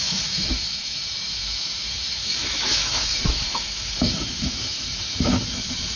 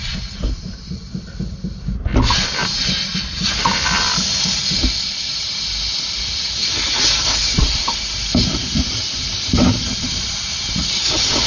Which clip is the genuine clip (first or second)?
second